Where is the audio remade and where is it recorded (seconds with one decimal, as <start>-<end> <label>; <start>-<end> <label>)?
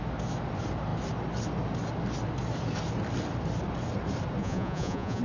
0.0-4.4 recorded; 4.4-5.2 remade